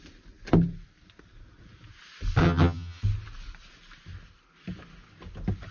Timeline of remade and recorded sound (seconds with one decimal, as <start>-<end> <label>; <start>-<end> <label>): 0.0-2.4 recorded; 2.4-3.0 remade; 3.0-5.7 recorded